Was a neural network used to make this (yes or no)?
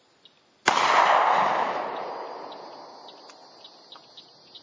no